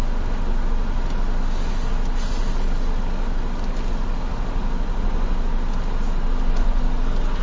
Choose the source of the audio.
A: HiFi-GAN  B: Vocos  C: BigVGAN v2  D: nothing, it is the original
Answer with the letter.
D